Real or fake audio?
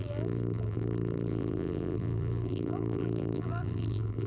fake